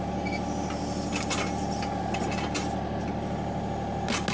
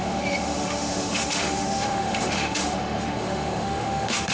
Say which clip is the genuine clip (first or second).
first